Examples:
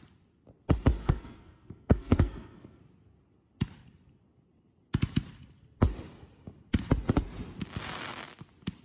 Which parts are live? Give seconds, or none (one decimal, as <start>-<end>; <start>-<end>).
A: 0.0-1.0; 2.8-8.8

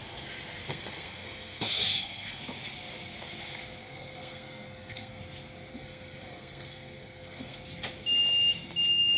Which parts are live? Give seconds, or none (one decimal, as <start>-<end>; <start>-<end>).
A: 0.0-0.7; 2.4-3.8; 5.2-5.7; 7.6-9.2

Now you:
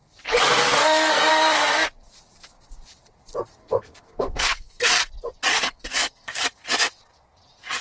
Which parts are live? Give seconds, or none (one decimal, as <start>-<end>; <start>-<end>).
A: 0.0-0.8; 1.3-3.6; 5.1-5.5; 6.4-7.8